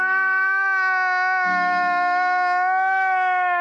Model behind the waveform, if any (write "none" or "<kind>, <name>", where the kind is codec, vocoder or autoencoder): autoencoder, DAC-VAE